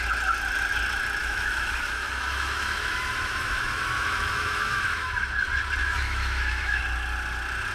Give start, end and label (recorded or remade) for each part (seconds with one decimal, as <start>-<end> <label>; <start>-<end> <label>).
0.0-1.2 recorded; 1.2-5.1 remade; 5.1-5.8 recorded; 5.8-6.8 remade; 6.8-7.7 recorded